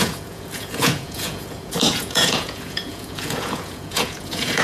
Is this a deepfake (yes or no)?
yes